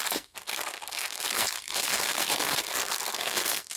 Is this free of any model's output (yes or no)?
no